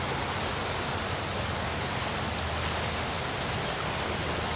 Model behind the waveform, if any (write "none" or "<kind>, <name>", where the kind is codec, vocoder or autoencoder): none